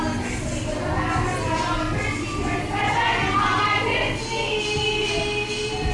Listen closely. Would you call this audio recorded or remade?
recorded